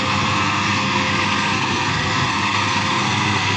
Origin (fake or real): fake